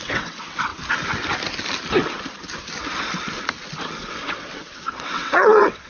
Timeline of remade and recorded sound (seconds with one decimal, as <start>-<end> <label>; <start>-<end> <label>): 0.0-0.7 remade; 0.7-4.1 recorded; 4.1-5.9 remade